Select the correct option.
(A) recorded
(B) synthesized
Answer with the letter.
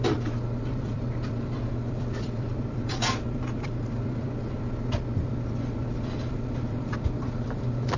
B